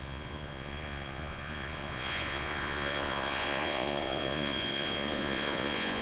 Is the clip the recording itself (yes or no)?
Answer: no